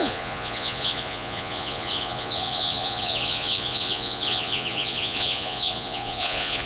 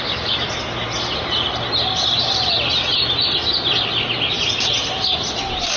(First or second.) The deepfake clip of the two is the first